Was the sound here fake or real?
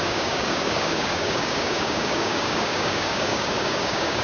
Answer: fake